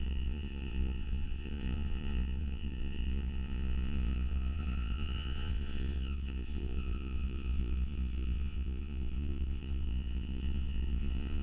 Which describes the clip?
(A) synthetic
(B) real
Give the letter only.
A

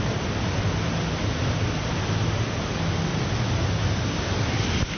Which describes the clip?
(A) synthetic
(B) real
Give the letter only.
B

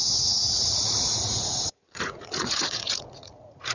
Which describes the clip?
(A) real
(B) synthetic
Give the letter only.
B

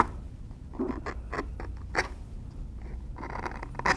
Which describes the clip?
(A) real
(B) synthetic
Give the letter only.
A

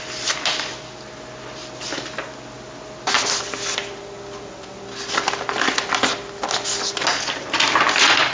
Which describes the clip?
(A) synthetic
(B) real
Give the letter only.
B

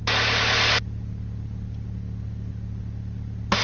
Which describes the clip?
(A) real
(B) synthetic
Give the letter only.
A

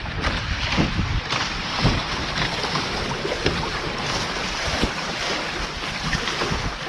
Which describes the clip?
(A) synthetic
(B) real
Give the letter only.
B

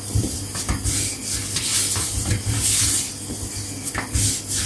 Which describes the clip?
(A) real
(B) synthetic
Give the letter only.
A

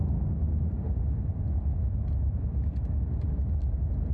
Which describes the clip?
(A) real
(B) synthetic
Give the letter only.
A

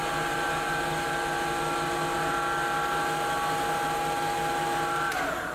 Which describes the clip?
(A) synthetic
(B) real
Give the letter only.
B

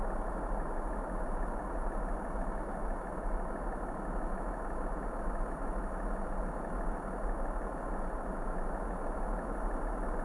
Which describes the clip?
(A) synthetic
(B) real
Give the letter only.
B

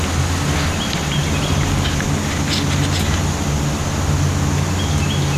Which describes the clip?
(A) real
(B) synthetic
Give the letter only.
A